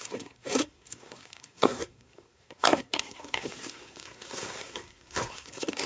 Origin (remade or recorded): remade